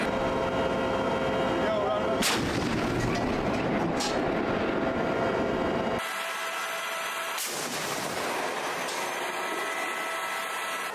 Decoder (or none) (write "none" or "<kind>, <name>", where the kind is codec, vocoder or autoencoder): none